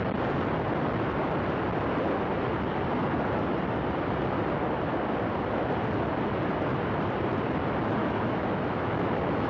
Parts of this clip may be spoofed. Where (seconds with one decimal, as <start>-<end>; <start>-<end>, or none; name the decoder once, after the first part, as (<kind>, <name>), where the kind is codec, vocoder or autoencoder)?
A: 8.0-9.5 (autoencoder, DAC-VAE)